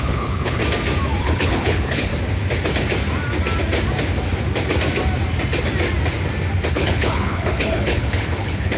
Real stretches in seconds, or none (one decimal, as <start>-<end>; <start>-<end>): 0.6-1.2; 2.1-6.7